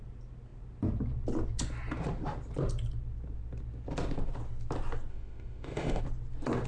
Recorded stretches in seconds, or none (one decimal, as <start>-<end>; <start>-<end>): 0.0-5.1; 6.0-6.7